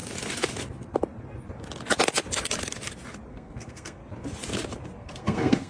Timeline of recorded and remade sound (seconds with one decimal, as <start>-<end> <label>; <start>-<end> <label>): 0.0-3.3 recorded; 3.3-4.0 remade; 4.0-5.0 recorded; 5.0-5.7 remade